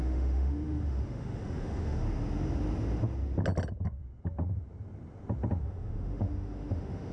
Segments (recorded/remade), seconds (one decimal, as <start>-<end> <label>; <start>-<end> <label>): 0.0-2.0 remade; 2.0-5.6 recorded; 5.6-7.1 remade